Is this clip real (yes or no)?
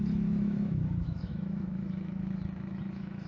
no